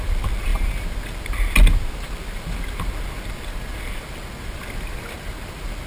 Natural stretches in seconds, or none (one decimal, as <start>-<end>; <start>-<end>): 0.0-5.9